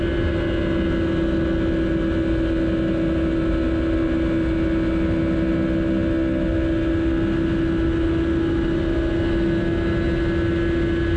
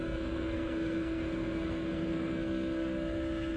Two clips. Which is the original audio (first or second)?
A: first